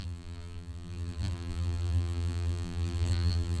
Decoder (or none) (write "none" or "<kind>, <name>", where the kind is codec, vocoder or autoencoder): vocoder, BigVGAN v2